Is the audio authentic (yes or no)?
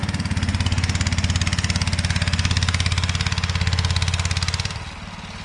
yes